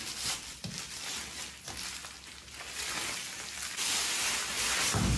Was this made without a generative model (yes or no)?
yes